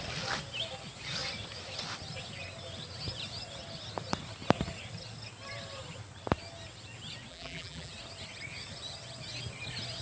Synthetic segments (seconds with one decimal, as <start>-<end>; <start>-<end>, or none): 7.3-7.9